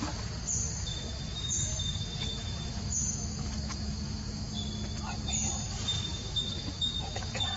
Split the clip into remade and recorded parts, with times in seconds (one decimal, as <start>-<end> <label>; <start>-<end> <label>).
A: 0.0-0.9 recorded; 0.9-4.5 remade; 4.5-6.0 recorded; 6.0-7.6 remade